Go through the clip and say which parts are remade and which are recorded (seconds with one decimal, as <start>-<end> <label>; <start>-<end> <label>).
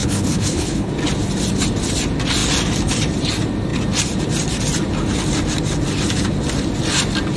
0.0-0.9 remade; 0.9-7.4 recorded